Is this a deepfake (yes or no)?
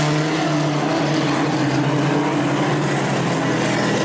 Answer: no